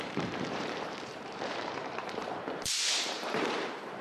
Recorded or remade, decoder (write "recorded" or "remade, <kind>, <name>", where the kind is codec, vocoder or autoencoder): remade, vocoder, BigVGAN v2